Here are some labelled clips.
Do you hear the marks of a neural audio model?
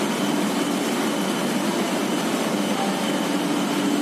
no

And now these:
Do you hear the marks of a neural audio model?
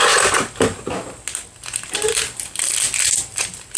no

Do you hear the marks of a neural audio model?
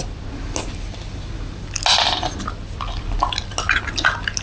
no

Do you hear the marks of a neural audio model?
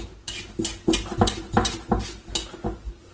no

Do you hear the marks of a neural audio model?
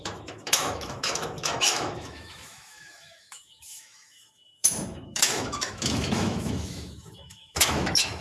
yes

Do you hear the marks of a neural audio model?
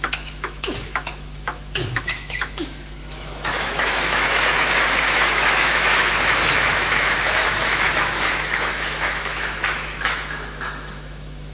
yes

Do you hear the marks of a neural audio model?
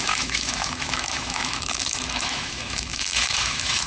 yes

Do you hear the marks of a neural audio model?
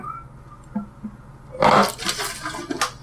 no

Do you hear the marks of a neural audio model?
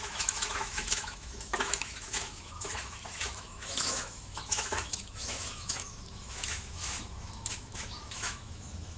yes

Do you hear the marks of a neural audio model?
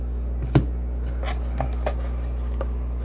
no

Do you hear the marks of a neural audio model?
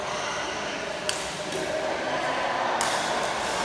no